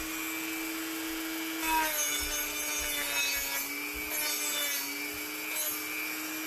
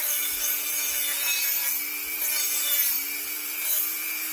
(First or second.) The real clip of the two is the first